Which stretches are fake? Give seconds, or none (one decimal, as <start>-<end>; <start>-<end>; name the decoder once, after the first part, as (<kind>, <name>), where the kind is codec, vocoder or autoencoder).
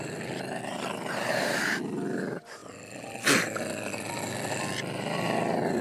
none